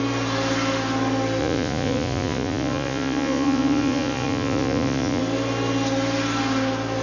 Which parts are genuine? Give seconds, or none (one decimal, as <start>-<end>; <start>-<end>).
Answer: 0.0-1.4; 5.2-7.0